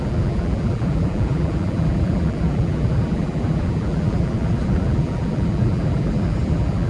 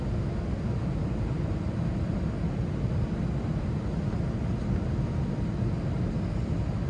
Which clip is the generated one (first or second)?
first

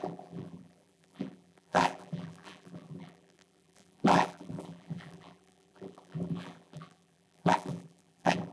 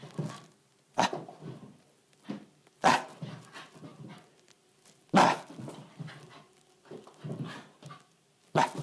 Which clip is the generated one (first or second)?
first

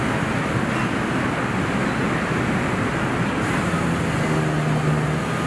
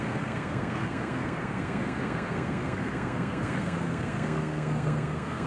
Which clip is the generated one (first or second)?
second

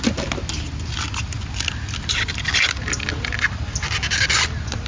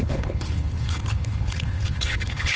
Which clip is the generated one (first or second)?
second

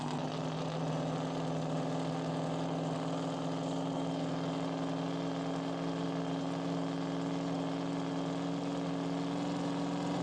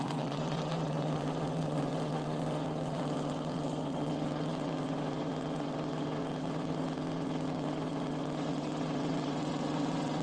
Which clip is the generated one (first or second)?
second